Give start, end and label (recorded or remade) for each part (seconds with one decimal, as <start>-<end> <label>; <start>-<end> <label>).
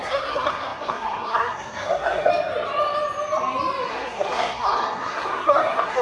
0.0-2.3 remade; 2.3-3.9 recorded; 3.9-6.0 remade